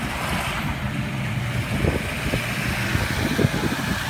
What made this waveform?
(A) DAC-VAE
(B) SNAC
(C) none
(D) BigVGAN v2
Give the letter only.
C